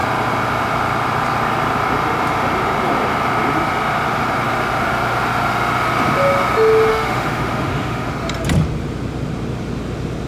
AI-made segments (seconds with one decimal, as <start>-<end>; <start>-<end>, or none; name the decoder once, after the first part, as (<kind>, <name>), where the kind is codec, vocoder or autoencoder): 6.9-8.1 (autoencoder, DAC-VAE)

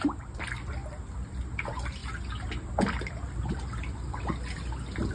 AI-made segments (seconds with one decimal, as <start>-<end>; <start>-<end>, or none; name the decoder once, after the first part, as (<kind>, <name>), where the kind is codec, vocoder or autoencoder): none

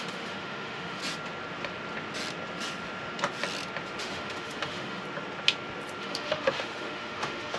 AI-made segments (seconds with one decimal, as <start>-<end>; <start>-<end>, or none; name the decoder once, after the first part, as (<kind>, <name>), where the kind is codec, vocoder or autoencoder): 0.0-1.0 (autoencoder, DAC-VAE); 4.0-5.0; 6.0-7.6

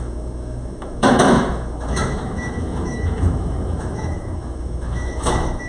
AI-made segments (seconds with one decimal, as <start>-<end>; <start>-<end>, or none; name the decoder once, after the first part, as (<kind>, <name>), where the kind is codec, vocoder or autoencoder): 0.0-5.7 (autoencoder, DAC-VAE)

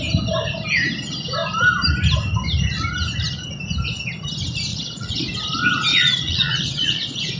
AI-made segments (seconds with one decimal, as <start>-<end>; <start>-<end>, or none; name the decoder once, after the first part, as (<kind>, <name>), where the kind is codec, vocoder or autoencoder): 4.7-5.2 (vocoder, Vocos); 5.9-7.4